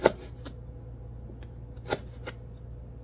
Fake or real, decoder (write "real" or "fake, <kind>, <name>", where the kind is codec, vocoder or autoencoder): real